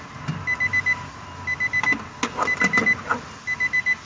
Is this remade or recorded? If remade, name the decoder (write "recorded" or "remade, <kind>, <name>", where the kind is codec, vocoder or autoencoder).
recorded